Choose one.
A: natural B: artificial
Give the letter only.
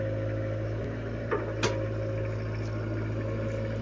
A